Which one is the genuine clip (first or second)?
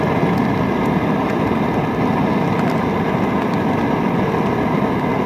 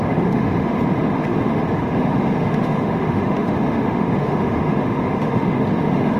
first